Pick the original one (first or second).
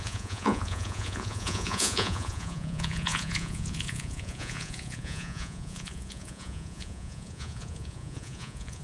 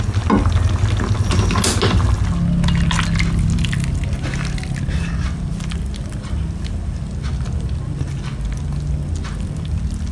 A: second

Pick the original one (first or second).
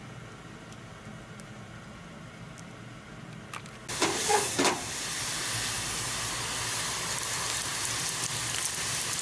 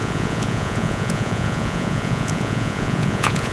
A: first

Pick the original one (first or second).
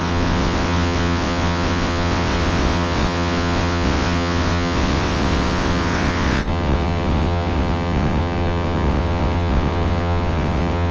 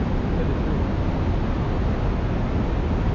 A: second